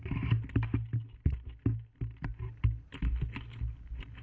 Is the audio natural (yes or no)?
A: yes